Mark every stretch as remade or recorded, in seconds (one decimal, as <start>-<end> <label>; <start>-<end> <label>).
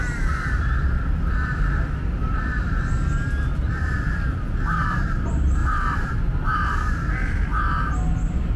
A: 0.0-2.4 remade; 2.4-3.4 recorded; 3.4-4.7 remade; 4.7-5.6 recorded; 5.6-6.1 remade; 6.1-8.6 recorded